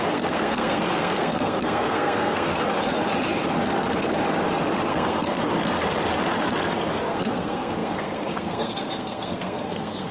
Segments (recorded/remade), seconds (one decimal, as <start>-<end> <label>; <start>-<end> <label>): 0.0-2.5 remade; 2.5-4.9 recorded; 4.9-5.4 remade; 5.4-7.0 recorded; 7.0-10.1 remade